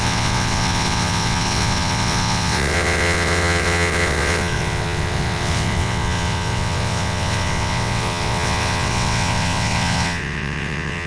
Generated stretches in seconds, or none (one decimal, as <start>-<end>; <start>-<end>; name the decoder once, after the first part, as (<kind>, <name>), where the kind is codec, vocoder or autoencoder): 0.0-11.1 (vocoder, WaveNeXt)

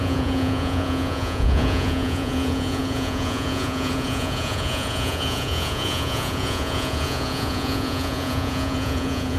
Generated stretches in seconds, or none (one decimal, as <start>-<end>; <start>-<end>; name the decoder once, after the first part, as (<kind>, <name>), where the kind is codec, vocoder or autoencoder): 0.0-9.4 (vocoder, Vocos)

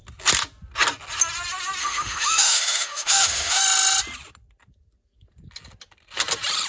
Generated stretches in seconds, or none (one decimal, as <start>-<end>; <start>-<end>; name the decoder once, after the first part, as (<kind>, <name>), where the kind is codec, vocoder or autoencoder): 1.8-3.6 (autoencoder, DAC-VAE)